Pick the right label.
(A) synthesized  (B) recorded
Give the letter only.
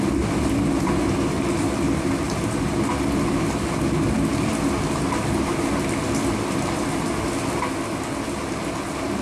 B